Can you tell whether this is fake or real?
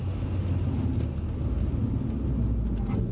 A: real